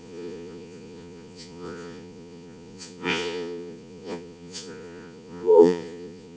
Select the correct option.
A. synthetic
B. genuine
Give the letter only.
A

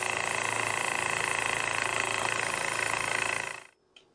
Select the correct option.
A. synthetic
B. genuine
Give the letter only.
B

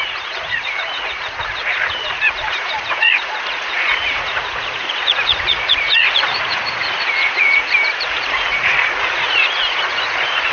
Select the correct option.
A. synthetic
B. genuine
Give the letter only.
A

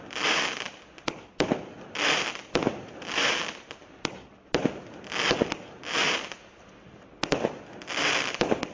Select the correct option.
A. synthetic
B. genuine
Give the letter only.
B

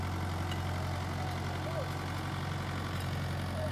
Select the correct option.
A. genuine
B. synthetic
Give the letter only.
A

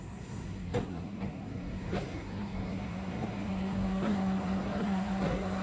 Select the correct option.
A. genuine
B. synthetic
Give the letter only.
B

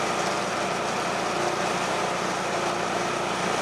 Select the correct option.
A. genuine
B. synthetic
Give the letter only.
A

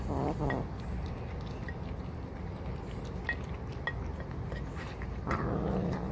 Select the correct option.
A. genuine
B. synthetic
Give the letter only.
A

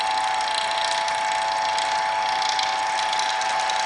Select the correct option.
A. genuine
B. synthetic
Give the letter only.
A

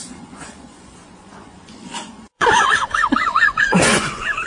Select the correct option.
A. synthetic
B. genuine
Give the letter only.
A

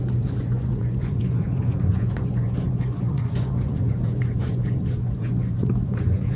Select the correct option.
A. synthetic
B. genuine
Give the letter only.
A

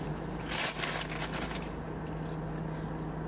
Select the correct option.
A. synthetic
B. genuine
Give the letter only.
B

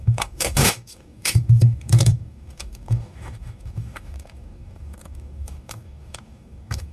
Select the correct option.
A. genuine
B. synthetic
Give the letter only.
B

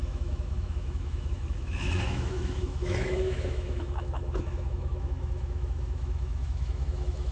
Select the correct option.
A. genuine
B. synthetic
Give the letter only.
B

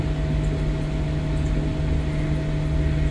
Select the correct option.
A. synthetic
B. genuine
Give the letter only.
B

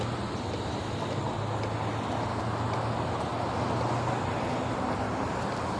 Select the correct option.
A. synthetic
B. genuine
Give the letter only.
B